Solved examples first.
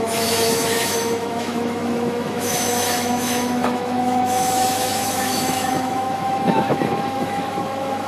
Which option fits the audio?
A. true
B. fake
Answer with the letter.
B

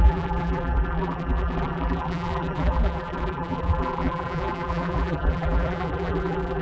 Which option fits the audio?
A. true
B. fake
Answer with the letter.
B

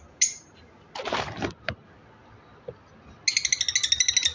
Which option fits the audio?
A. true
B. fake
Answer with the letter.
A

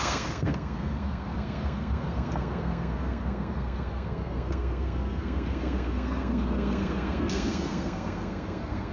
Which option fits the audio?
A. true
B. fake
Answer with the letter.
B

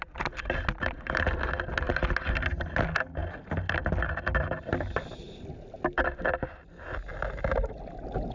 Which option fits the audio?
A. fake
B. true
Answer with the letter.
B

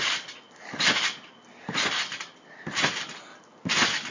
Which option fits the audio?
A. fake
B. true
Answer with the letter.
B